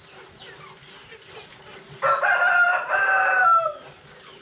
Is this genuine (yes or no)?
yes